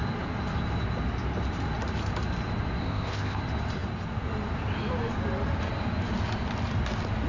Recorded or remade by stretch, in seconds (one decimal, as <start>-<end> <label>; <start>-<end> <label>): 0.0-2.8 recorded; 2.8-3.4 remade; 3.4-7.3 recorded